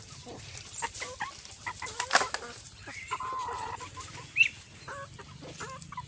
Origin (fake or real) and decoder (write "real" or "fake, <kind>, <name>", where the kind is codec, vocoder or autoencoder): real